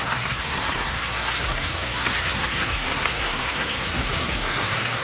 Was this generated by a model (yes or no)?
yes